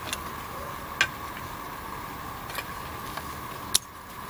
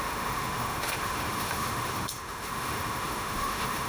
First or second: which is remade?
second